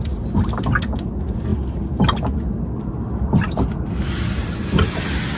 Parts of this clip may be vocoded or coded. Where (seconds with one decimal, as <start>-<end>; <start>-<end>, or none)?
none